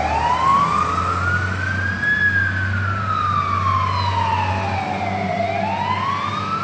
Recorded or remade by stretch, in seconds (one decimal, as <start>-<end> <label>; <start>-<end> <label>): 0.0-6.6 recorded